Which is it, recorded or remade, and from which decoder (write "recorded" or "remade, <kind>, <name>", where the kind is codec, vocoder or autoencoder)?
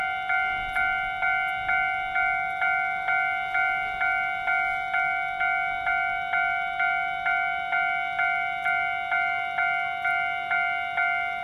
recorded